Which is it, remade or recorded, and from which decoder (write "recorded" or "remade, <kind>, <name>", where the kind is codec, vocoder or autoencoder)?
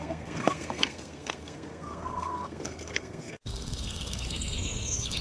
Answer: remade, codec, SNAC